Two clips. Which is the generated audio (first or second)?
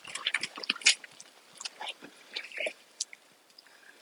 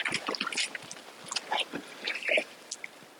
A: first